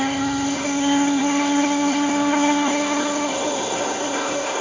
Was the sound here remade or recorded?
remade